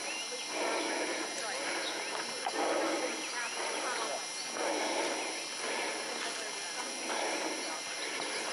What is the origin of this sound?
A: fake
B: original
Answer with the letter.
B